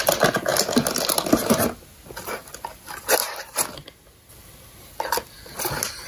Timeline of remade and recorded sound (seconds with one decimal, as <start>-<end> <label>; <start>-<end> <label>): 0.0-0.5 remade; 0.5-2.6 recorded; 2.6-3.2 remade; 3.2-4.3 recorded; 4.3-6.1 remade